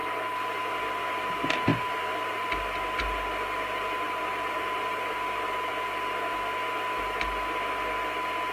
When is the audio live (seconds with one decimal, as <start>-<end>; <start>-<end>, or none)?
0.7-1.7; 5.7-8.5